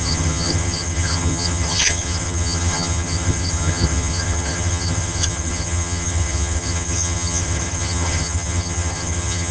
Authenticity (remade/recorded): remade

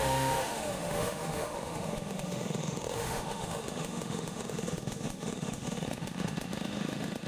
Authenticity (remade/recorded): remade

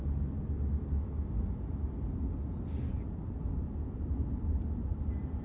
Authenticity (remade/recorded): recorded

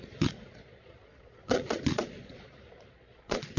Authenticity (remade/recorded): remade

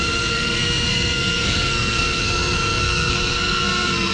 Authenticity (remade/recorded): remade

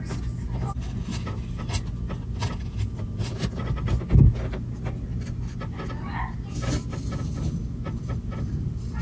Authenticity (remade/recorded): recorded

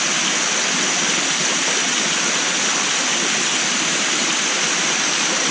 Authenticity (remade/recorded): recorded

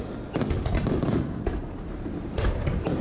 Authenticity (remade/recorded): recorded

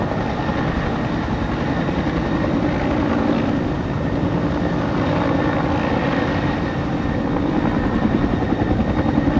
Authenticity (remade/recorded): recorded